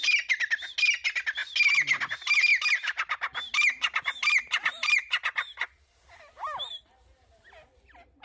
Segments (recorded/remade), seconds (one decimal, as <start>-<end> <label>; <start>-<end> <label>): 0.0-8.2 recorded